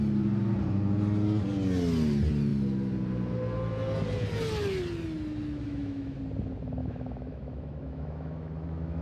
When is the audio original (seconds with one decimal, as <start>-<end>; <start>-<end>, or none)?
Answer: 0.0-5.6; 6.2-6.8